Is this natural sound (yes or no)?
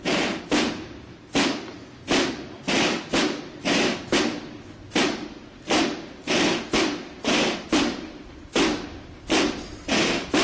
yes